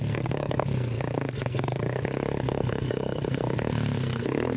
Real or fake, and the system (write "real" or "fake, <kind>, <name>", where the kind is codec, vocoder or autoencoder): fake, codec, SNAC